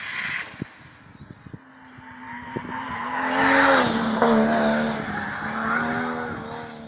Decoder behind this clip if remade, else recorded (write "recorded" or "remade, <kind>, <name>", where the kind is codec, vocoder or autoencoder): recorded